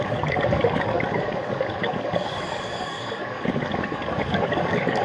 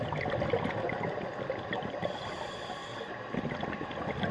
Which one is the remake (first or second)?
first